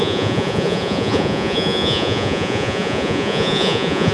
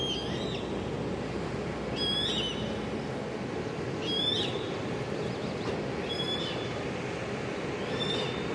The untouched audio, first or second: second